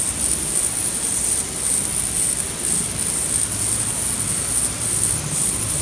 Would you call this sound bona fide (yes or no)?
yes